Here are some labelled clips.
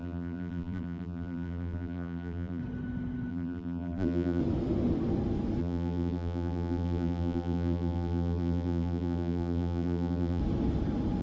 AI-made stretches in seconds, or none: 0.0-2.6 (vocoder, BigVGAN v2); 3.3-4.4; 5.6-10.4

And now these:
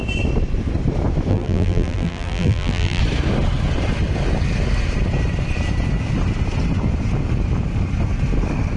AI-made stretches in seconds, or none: 1.3-3.0 (vocoder, BigVGAN v2)

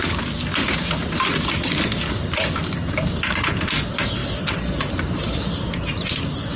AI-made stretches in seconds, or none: 4.2-6.6 (vocoder, BigVGAN v2)